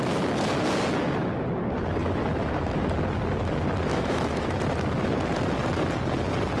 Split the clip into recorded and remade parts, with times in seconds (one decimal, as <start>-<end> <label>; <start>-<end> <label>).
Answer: 0.0-2.0 recorded; 2.0-2.9 remade; 2.9-3.9 recorded; 3.9-4.6 remade; 4.6-6.6 recorded